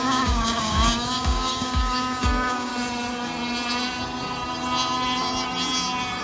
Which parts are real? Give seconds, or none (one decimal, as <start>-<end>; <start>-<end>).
2.7-6.2